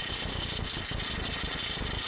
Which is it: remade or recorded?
recorded